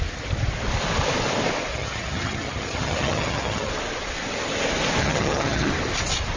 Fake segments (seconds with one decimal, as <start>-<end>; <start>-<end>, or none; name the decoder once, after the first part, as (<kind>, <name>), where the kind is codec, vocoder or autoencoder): 1.7-3.7 (vocoder, HiFi-GAN); 5.0-5.7